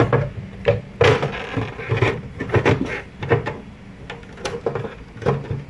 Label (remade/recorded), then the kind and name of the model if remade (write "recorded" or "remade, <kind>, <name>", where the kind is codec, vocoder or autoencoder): recorded